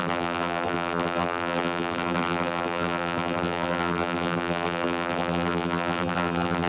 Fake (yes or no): yes